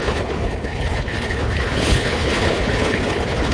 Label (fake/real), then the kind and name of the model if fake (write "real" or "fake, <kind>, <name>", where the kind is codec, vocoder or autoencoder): fake, codec, HILCodec